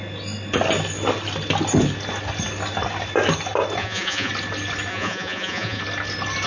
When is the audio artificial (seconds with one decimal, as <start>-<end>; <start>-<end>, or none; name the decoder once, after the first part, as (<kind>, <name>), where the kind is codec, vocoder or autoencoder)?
3.8-4.3 (vocoder, Vocos); 4.9-5.8